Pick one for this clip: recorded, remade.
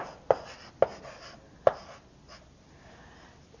recorded